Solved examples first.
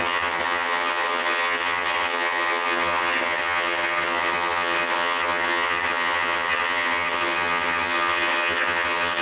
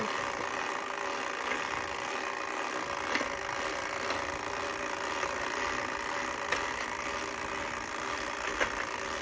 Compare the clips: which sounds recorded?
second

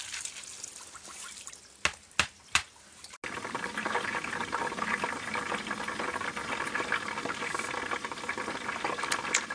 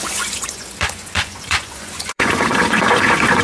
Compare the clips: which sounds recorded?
first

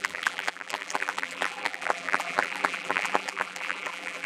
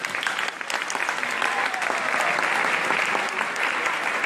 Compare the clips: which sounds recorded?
second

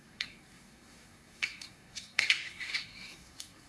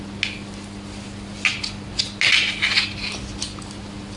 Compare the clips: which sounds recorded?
second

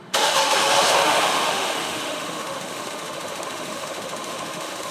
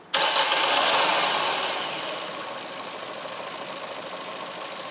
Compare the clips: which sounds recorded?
second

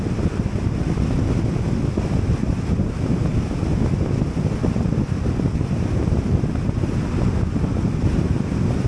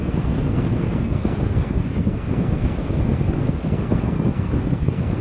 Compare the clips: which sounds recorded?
first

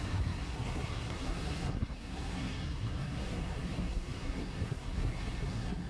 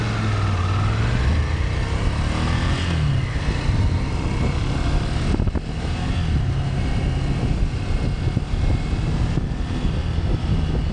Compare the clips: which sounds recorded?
second